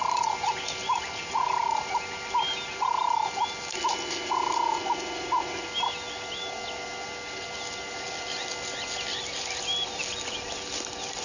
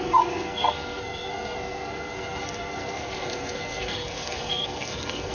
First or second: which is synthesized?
second